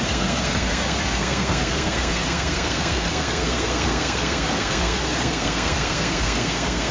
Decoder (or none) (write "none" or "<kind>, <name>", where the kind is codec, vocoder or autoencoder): codec, SNAC